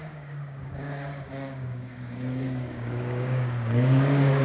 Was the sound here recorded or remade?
remade